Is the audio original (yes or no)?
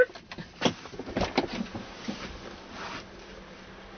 yes